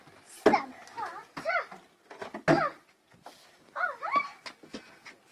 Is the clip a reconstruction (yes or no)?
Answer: no